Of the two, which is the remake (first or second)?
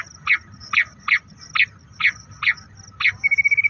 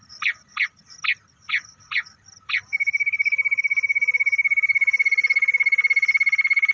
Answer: second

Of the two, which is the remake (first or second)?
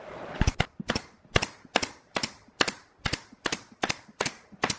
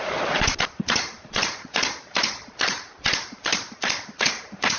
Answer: second